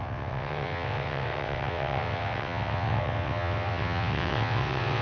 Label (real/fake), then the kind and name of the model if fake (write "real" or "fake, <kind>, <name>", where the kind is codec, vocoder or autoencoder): fake, vocoder, WaveNeXt